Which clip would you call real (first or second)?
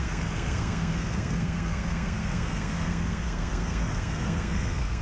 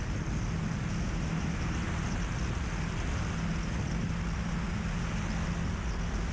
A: second